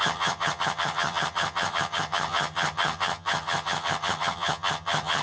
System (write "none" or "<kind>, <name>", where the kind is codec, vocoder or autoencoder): vocoder, HiFi-GAN